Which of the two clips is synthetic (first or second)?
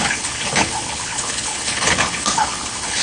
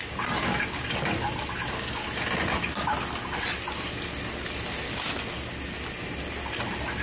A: first